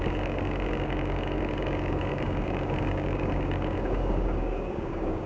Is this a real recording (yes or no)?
no